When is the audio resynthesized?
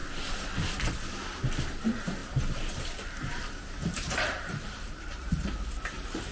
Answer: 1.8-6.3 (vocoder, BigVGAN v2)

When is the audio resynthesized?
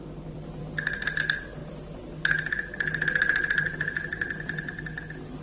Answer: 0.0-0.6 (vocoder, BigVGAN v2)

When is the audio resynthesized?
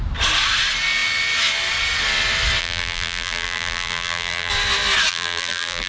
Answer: 2.6-4.5 (vocoder, BigVGAN v2); 5.1-5.9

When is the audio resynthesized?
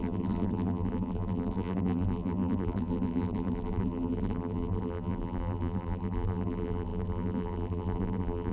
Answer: 0.0-8.5 (vocoder, BigVGAN v2)